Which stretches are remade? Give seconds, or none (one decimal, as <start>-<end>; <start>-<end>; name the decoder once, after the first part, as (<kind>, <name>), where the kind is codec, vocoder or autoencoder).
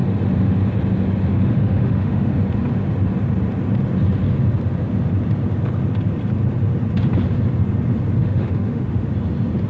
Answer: 1.3-2.3 (autoencoder, DAC-VAE); 8.2-9.1